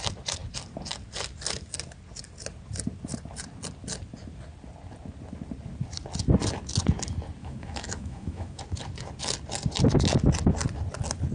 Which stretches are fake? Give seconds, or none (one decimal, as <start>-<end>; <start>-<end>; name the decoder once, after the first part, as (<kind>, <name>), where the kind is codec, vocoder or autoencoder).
7.4-8.6 (autoencoder, DAC-VAE)